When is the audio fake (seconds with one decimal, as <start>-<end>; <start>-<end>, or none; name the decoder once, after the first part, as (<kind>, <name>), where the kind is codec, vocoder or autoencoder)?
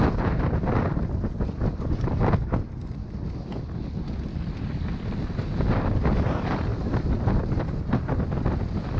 none